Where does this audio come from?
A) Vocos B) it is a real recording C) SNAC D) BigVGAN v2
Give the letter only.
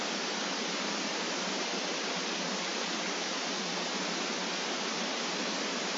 D